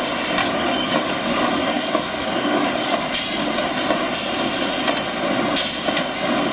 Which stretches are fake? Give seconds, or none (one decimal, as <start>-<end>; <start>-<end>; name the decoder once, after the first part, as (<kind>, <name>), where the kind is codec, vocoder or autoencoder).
0.4-3.1 (codec, DAC)